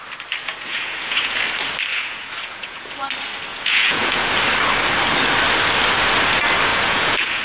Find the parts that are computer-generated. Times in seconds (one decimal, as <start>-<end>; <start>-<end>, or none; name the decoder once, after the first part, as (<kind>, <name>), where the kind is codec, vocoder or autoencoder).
0.4-1.4 (vocoder, Vocos); 1.9-2.9; 3.5-4.3; 6.7-7.4

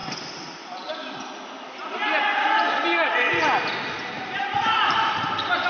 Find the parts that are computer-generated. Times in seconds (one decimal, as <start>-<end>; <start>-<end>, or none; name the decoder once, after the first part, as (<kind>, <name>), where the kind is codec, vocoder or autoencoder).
4.2-5.2 (vocoder, BigVGAN v2)

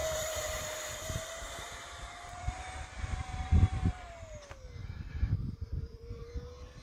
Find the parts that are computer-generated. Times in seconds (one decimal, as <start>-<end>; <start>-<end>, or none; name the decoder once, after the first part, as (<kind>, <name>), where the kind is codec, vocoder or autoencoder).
0.0-4.1 (vocoder, BigVGAN v2); 4.8-6.3